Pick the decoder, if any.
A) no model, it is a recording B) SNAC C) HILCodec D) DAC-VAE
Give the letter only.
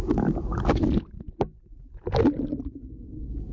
A